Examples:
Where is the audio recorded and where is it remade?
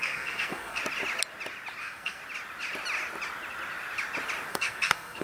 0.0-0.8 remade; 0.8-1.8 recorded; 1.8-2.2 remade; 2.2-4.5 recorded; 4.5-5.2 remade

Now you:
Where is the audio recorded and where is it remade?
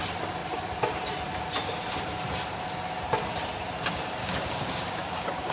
0.0-4.2 recorded; 4.2-5.5 remade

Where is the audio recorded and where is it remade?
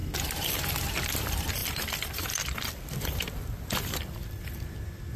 0.0-1.6 recorded; 1.6-4.7 remade; 4.7-5.2 recorded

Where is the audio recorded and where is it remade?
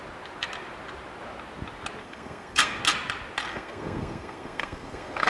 0.0-2.0 recorded; 2.0-2.8 remade; 2.8-3.5 recorded; 3.5-5.3 remade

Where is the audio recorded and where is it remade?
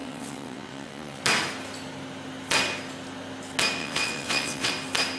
0.0-1.2 remade; 1.2-3.8 recorded; 3.8-4.7 remade; 4.7-5.2 recorded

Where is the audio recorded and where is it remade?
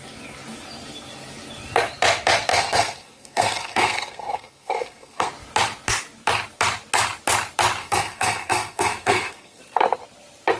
0.0-2.5 recorded; 2.5-5.3 remade; 5.3-7.8 recorded; 7.8-9.6 remade; 9.6-10.6 recorded